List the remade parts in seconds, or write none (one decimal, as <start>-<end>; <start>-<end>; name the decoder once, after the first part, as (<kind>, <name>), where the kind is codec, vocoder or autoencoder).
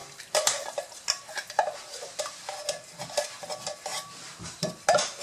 0.0-2.4 (vocoder, BigVGAN v2); 3.9-4.7